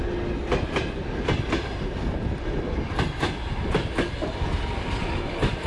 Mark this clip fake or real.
real